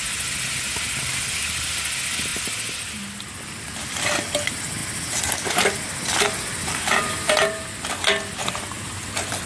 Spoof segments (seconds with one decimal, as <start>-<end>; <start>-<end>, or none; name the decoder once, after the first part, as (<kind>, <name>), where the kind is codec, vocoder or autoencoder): none